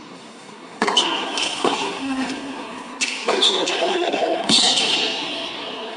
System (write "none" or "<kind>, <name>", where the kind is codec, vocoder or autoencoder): codec, SNAC